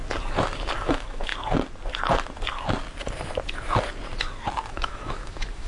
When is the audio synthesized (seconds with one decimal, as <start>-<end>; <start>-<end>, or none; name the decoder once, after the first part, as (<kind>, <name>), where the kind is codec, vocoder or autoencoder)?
0.9-1.3 (autoencoder, DAC-VAE); 4.7-5.7